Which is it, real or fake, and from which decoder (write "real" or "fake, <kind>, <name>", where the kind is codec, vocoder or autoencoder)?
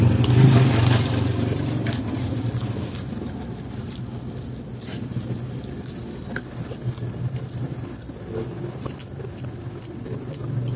real